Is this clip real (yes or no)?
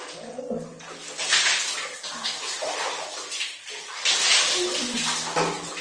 yes